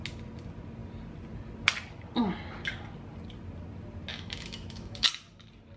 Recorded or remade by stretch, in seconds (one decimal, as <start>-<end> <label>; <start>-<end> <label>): 0.0-4.1 recorded; 4.1-5.1 remade; 5.1-5.8 recorded